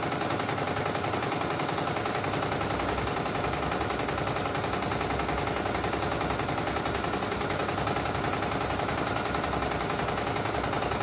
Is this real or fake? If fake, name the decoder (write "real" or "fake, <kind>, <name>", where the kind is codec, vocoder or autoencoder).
real